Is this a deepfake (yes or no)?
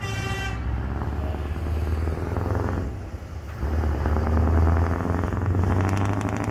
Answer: no